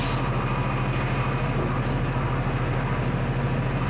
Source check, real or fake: real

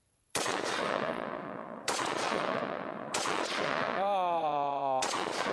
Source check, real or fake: fake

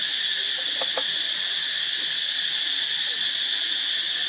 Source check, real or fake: real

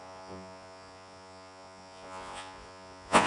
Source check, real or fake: fake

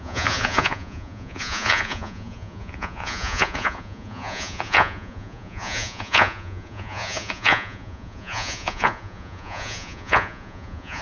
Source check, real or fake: fake